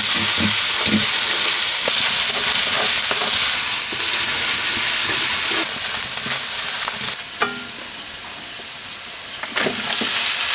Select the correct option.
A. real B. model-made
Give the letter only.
A